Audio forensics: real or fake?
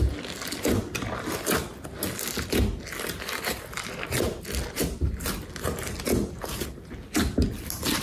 real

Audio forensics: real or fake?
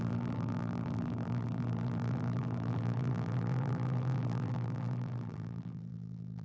fake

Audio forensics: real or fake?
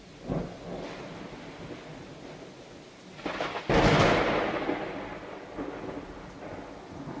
real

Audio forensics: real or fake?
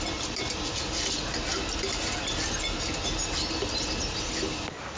real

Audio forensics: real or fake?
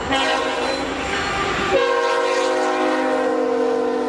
real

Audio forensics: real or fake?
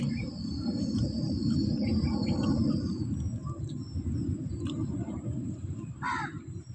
fake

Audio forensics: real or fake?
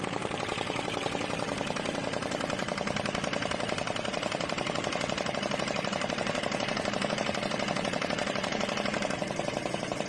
fake